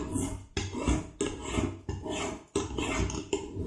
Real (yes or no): yes